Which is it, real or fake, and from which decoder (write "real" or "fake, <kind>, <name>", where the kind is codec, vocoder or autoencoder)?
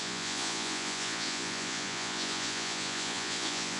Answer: fake, vocoder, Vocos